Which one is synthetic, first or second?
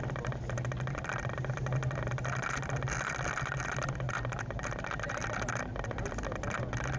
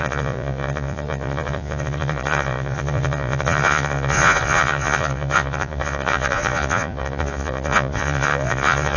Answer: second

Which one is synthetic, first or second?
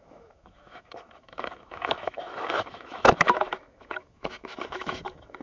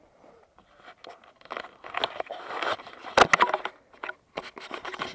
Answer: first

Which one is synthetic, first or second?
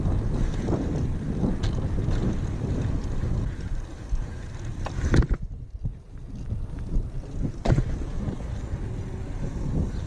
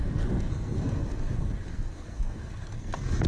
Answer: second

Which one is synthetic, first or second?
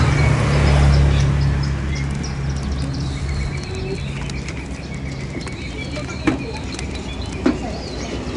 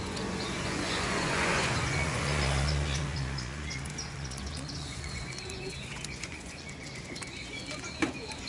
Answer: second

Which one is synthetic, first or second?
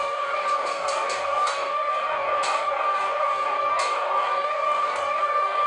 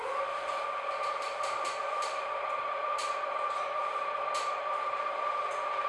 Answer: first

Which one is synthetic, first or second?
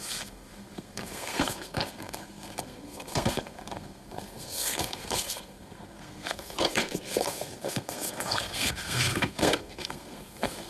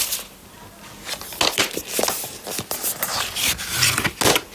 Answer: first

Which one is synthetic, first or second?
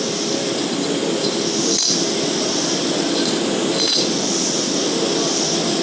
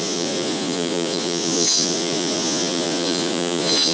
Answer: second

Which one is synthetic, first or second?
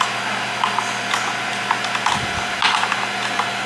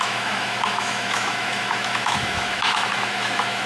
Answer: second